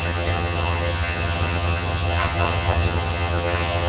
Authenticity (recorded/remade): remade